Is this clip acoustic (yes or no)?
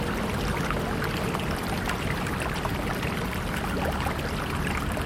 yes